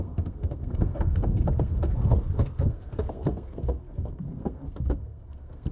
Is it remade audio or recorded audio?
remade